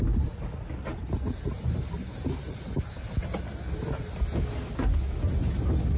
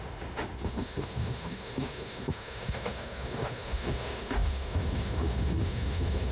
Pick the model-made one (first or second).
second